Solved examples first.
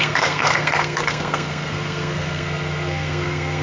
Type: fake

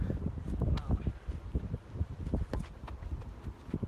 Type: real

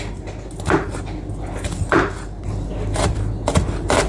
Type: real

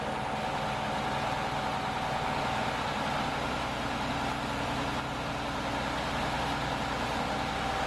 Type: real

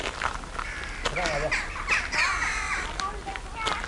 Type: real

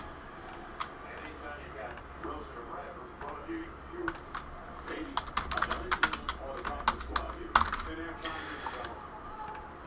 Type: real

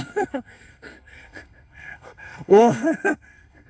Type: fake